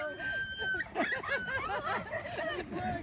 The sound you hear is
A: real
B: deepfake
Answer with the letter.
A